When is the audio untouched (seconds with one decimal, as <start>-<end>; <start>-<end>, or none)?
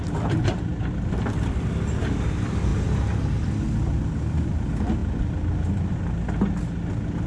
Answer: 0.0-7.3